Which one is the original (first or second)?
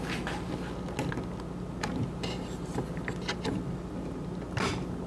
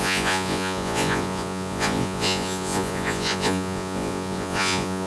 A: first